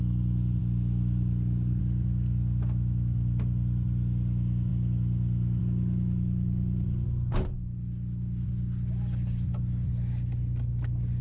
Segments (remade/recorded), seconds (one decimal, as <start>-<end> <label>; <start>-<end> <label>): 0.0-0.6 recorded; 0.6-1.8 remade; 1.8-11.2 recorded

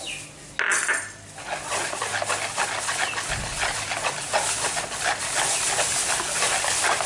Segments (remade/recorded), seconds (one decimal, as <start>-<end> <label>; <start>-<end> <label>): 0.0-7.1 recorded

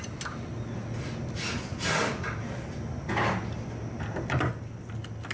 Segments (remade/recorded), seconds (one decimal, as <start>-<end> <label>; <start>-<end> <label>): 0.0-5.3 recorded

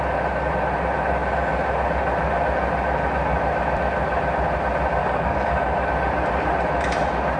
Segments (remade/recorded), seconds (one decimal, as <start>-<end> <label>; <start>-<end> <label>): 0.0-5.0 recorded; 5.0-5.9 remade; 5.9-7.4 recorded

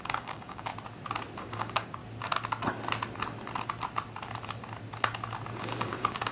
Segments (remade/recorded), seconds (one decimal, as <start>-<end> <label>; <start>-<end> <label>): 0.0-0.7 remade; 0.7-1.4 recorded; 1.4-2.0 remade; 2.0-5.6 recorded; 5.6-6.3 remade